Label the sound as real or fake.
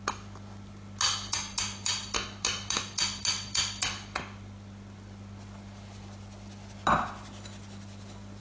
real